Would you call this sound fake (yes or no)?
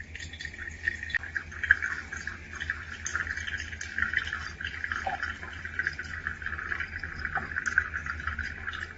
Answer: no